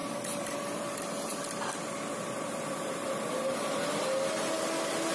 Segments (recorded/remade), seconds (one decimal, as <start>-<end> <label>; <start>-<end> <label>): 0.0-3.1 remade; 3.1-5.1 recorded